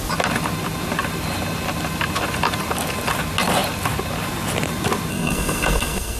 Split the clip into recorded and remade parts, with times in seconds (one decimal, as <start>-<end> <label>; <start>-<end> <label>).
0.0-5.1 recorded; 5.1-6.2 remade